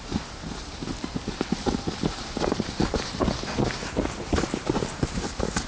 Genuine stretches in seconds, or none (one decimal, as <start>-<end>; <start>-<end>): 0.0-5.7